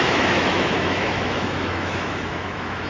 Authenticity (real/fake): fake